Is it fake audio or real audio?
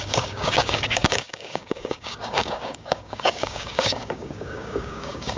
fake